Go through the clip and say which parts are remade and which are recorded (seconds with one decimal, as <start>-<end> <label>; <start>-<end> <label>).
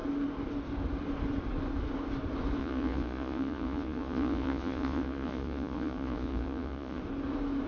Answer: 0.0-2.6 recorded; 2.6-7.0 remade; 7.0-7.7 recorded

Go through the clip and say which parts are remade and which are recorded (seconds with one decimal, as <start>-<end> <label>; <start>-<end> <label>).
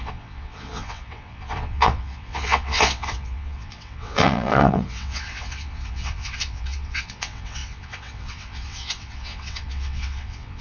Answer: 0.0-10.6 remade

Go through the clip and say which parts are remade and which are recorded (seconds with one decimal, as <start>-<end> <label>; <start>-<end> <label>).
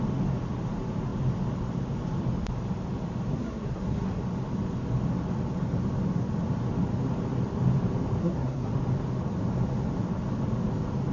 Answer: 0.0-3.3 recorded; 3.3-4.2 remade; 4.2-8.2 recorded; 8.2-8.7 remade; 8.7-11.1 recorded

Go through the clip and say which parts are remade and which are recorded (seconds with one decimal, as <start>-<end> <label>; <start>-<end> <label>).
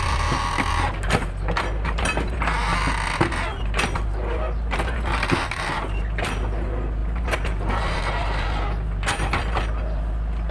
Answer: 0.0-10.5 recorded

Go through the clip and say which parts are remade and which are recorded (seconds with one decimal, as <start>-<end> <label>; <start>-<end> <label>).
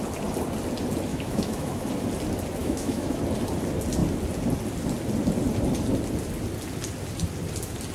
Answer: 0.0-1.1 recorded; 1.1-1.9 remade; 1.9-2.6 recorded; 2.6-3.2 remade; 3.2-7.9 recorded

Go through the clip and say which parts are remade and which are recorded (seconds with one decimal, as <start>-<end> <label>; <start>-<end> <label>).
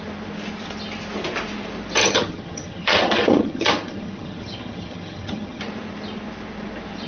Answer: 0.0-2.0 recorded; 2.0-5.6 remade; 5.6-7.1 recorded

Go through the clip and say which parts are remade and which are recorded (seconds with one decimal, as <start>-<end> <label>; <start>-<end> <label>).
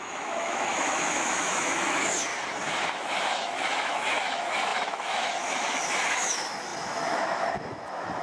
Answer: 0.0-2.3 remade; 2.3-3.0 recorded; 3.0-8.2 remade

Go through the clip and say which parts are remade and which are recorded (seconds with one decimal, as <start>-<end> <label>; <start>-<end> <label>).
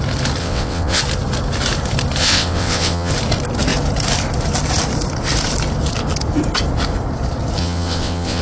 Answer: 0.0-0.4 recorded; 0.4-1.0 remade; 1.0-2.2 recorded; 2.2-3.1 remade; 3.1-7.6 recorded; 7.6-8.4 remade